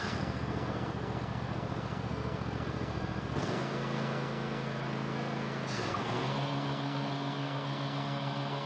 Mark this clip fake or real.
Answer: fake